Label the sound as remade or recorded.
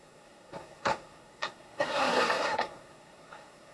remade